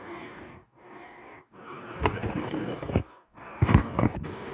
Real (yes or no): no